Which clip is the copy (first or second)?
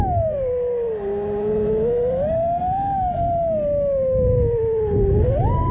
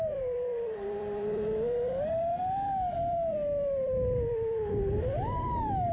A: second